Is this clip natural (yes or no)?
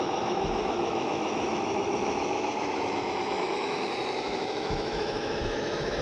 no